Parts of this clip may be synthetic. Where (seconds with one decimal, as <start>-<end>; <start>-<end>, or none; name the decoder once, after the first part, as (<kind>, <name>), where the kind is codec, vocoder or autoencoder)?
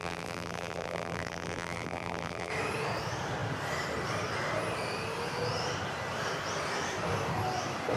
0.0-2.5 (vocoder, BigVGAN v2)